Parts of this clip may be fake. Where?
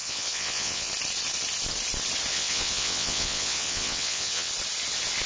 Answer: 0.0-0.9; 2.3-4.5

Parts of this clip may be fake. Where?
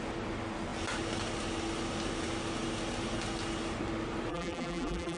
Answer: 4.3-5.2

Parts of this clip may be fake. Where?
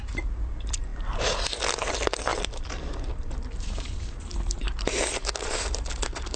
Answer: 2.3-5.9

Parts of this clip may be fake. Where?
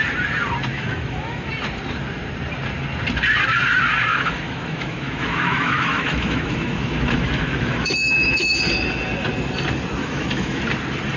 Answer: 0.7-1.5; 4.1-8.6; 10.0-10.6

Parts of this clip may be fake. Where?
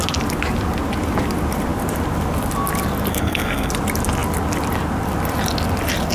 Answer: 3.1-3.7